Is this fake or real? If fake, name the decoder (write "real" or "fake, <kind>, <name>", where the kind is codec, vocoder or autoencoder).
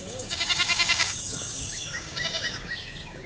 fake, codec, DAC